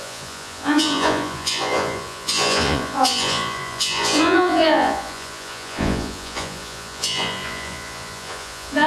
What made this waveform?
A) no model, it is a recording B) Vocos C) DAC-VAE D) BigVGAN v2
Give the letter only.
B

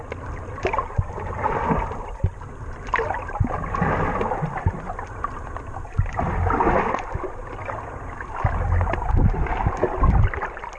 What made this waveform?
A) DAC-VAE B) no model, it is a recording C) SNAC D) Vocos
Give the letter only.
B